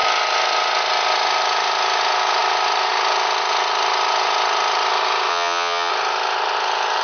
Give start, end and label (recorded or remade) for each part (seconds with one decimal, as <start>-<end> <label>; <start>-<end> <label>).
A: 0.0-5.3 recorded; 5.3-5.9 remade; 5.9-7.0 recorded